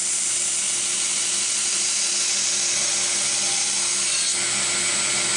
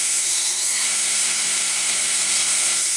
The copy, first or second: second